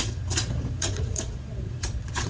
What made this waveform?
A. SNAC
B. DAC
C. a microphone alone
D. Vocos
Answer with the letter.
D